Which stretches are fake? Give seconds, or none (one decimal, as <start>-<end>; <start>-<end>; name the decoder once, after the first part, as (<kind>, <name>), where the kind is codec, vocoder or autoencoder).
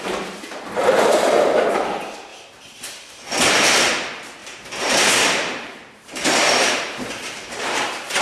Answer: 2.3-3.8 (vocoder, BigVGAN v2); 4.4-8.2